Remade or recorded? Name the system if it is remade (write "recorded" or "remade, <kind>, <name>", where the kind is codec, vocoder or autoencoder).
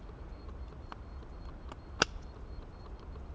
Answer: recorded